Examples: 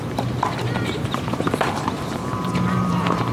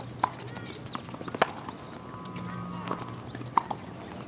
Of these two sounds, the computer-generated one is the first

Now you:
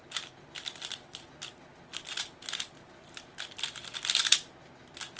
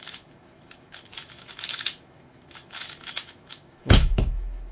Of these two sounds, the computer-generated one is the second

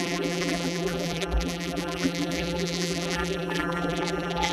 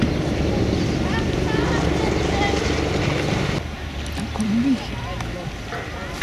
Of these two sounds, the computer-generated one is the first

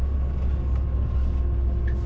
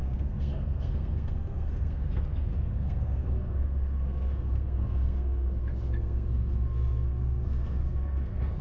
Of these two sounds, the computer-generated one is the second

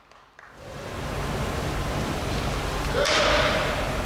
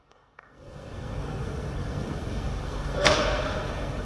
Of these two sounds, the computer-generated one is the second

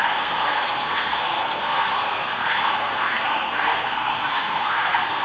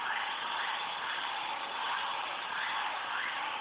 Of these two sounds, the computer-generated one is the first